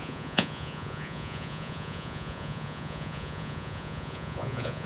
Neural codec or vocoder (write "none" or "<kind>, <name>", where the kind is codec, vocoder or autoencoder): vocoder, Vocos